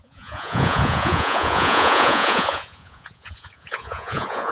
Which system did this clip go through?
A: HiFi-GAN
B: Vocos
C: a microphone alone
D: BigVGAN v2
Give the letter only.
B